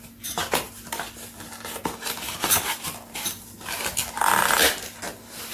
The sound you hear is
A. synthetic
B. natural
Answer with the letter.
B